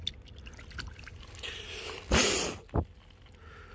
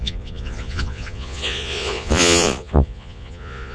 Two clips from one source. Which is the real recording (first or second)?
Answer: first